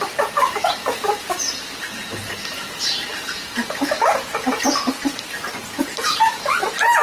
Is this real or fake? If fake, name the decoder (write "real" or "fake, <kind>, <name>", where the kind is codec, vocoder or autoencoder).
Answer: fake, vocoder, BigVGAN v2